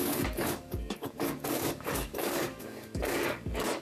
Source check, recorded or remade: remade